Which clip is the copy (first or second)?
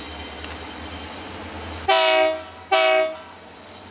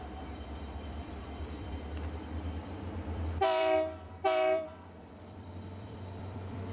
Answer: second